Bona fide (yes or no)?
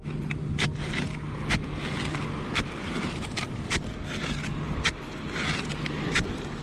yes